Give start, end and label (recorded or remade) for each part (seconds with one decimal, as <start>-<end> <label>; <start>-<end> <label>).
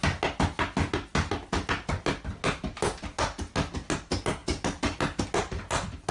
0.0-6.1 recorded